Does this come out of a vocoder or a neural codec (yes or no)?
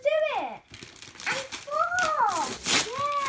no